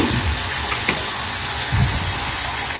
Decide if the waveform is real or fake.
fake